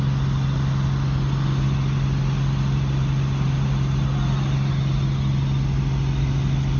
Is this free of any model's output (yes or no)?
yes